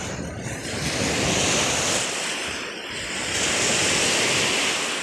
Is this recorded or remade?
recorded